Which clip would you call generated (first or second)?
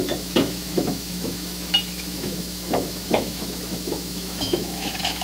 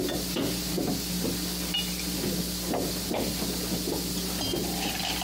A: first